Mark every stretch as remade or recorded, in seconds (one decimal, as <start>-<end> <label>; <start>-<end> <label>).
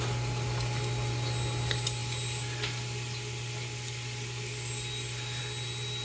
0.0-2.0 recorded; 2.0-5.4 remade; 5.4-6.0 recorded